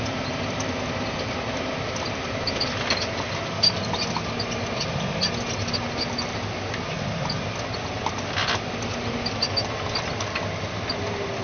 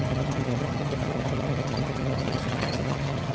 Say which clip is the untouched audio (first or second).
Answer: first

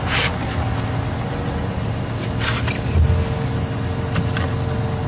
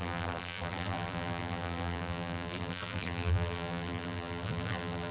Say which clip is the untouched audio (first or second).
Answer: first